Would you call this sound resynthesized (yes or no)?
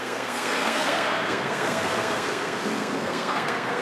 yes